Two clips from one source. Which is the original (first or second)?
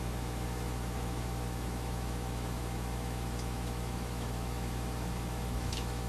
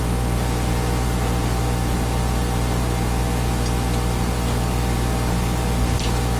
second